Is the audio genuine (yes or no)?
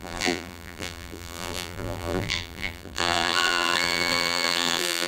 no